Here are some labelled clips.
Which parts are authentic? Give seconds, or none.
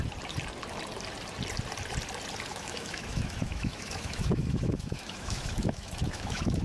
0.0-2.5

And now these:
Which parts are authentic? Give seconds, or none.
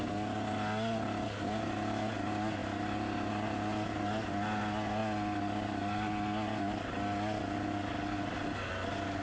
0.0-9.2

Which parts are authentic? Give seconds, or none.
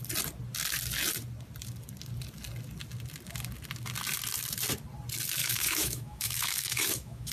0.0-5.4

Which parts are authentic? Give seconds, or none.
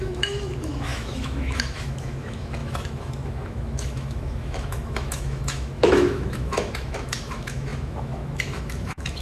none